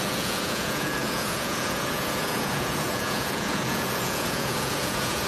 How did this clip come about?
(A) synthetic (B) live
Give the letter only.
A